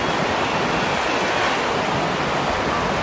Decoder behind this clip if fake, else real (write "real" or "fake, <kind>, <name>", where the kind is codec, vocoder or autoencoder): real